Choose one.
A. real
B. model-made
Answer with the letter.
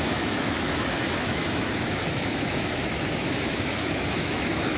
B